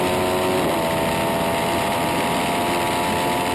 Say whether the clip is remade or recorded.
recorded